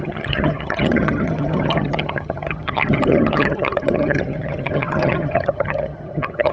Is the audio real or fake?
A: fake